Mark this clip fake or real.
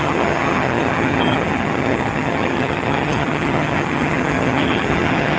fake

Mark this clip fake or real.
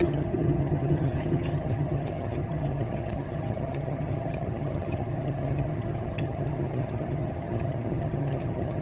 fake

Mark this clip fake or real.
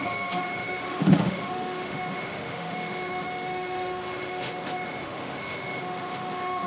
fake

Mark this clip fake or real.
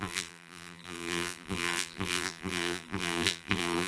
fake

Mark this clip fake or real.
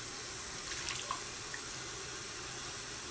real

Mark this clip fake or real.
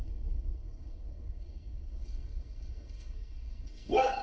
fake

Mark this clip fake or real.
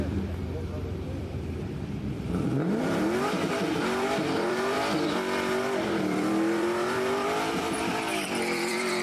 fake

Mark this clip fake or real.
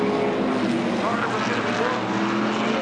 real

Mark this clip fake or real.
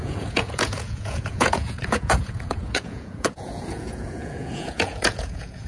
fake